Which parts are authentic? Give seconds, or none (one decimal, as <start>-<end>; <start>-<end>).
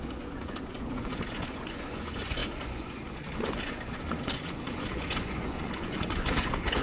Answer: none